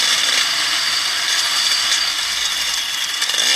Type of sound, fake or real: real